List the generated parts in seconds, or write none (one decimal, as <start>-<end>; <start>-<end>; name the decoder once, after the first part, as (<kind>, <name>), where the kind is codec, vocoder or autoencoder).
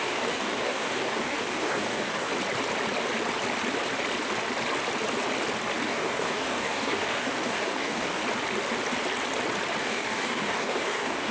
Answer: 0.0-2.3 (codec, DAC); 5.9-8.2; 9.8-11.3